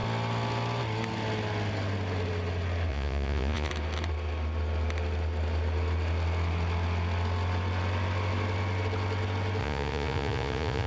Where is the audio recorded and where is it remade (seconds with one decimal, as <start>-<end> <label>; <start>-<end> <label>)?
0.0-2.9 recorded; 2.9-3.7 remade; 3.7-9.6 recorded; 9.6-10.9 remade